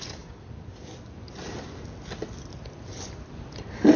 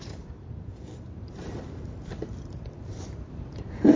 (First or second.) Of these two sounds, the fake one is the second